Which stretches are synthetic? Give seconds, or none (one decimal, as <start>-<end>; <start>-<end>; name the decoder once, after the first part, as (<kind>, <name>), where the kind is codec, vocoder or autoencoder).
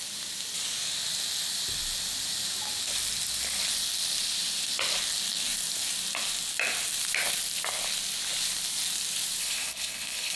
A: 9.4-10.4 (codec, HILCodec)